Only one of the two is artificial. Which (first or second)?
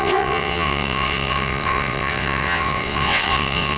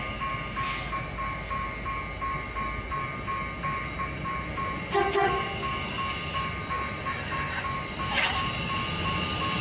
first